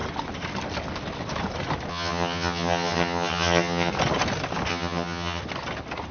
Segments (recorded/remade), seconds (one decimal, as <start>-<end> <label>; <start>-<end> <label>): 0.0-1.9 recorded; 1.9-3.9 remade; 3.9-4.7 recorded; 4.7-5.4 remade; 5.4-6.1 recorded